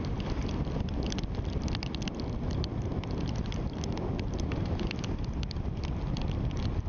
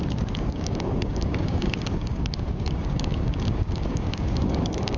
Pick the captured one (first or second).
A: first